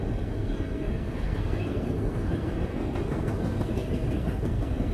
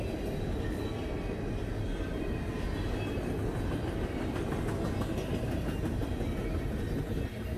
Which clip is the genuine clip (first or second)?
second